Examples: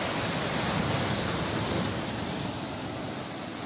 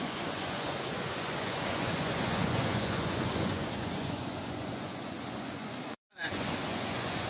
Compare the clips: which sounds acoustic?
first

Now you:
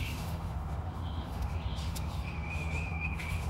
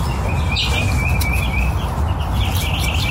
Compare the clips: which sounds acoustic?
second